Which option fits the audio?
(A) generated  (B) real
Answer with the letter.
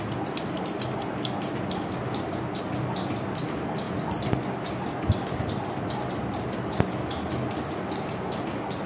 B